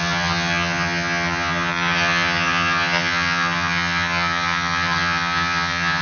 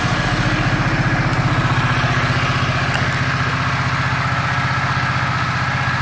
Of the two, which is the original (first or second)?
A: second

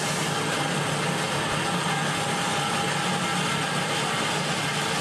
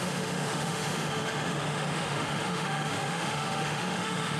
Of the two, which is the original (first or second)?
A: first